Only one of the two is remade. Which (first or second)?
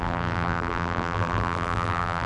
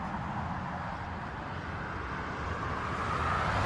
first